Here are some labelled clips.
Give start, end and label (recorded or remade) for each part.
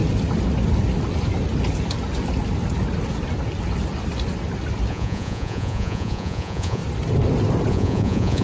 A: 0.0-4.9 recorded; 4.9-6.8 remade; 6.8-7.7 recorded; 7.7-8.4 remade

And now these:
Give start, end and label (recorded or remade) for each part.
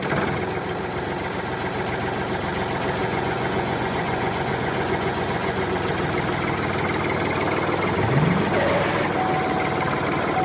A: 0.0-3.0 recorded; 3.0-5.7 remade; 5.7-10.4 recorded